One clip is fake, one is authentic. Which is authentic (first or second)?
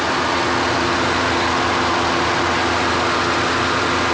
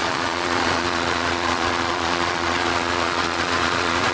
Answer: first